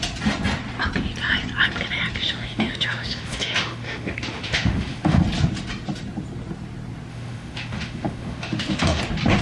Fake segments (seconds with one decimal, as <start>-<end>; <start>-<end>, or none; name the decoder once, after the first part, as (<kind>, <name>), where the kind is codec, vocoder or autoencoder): 2.2-5.2 (autoencoder, DAC-VAE); 7.1-9.0

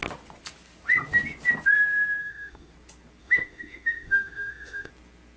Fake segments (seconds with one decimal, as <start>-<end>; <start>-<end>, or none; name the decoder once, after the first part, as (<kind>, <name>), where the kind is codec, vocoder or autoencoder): 2.2-2.7 (autoencoder, DAC-VAE); 3.2-4.9

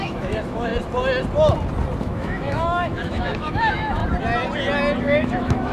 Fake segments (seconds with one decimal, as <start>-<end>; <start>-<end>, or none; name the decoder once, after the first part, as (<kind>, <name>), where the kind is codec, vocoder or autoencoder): 0.0-0.7 (autoencoder, DAC-VAE); 2.0-4.0; 5.0-5.7

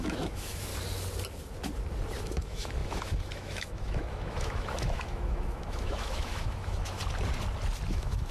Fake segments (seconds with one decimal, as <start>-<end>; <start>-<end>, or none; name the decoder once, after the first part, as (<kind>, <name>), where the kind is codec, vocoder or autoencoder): 0.0-0.7 (autoencoder, DAC-VAE); 2.2-7.0; 7.9-8.3

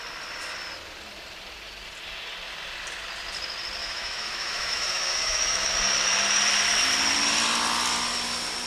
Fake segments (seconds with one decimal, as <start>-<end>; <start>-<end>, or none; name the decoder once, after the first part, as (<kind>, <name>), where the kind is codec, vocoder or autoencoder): 3.8-5.7 (autoencoder, DAC-VAE)

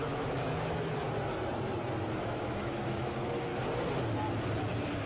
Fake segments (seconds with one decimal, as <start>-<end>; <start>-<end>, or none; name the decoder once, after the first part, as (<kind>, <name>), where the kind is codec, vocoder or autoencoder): 0.0-1.0 (autoencoder, DAC-VAE); 2.1-3.5

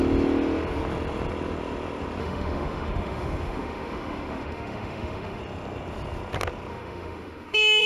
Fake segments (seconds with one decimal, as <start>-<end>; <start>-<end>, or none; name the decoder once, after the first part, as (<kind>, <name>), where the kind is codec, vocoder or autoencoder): 2.2-5.4 (autoencoder, DAC-VAE); 6.7-7.9

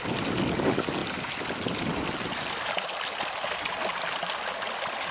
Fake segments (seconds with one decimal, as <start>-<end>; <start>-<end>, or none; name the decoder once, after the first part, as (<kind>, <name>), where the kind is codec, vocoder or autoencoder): none